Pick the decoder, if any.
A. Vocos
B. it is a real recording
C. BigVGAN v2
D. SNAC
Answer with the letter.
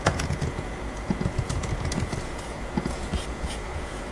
A